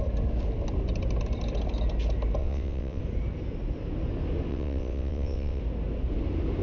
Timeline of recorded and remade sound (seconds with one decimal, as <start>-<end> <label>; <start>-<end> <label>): 0.0-2.4 recorded; 2.4-3.0 remade; 3.0-4.5 recorded; 4.5-5.6 remade; 5.6-6.6 recorded